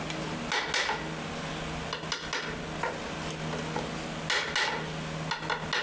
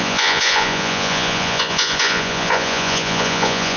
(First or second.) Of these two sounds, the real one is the first